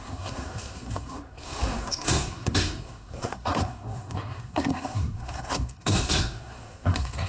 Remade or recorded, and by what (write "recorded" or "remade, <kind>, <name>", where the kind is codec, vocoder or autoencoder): remade, codec, SNAC